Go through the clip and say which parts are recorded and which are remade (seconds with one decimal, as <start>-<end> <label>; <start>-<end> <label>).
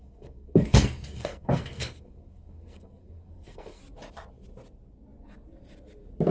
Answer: 0.0-3.8 remade; 3.8-6.3 recorded